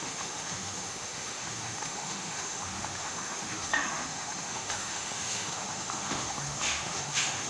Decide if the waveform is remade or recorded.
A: remade